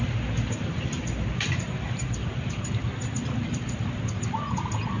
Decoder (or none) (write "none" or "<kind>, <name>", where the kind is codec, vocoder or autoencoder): none